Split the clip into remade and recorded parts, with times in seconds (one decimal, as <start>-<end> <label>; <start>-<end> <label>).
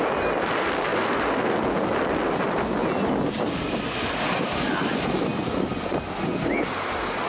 0.0-2.8 recorded; 2.8-4.8 remade; 4.8-7.3 recorded